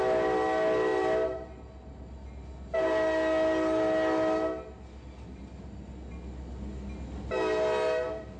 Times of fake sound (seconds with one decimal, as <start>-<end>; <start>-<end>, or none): none